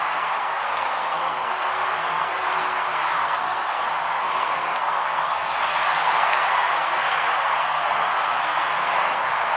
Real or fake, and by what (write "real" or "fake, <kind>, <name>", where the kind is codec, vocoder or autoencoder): fake, codec, SNAC